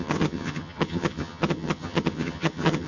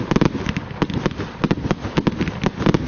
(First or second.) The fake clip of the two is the first